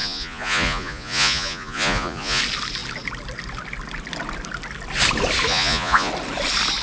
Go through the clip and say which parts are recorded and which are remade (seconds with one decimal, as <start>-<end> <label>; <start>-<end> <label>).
0.0-2.4 remade; 2.4-5.5 recorded; 5.5-6.1 remade; 6.1-6.8 recorded